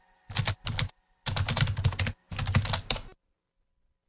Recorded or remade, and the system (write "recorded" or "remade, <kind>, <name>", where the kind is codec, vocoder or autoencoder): recorded